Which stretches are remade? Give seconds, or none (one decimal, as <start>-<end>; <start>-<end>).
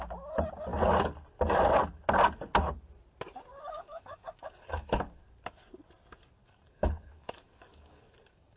3.6-5.2; 6.4-8.6